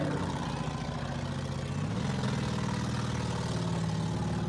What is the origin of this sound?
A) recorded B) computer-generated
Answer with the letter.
A